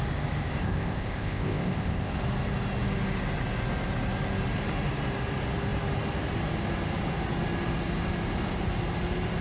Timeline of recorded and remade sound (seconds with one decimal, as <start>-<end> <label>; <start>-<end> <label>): 0.0-0.6 recorded; 0.6-2.1 remade; 2.1-9.4 recorded